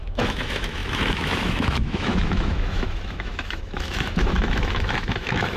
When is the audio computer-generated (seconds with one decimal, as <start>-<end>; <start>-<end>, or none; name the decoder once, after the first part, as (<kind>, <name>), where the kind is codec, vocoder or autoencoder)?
0.0-5.6 (autoencoder, DAC-VAE)